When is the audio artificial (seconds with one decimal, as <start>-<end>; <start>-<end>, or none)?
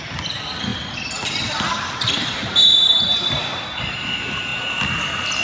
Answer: none